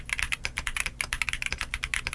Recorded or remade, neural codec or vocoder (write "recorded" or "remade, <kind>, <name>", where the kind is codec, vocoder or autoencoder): recorded